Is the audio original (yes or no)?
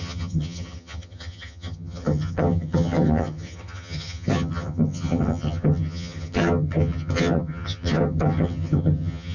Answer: no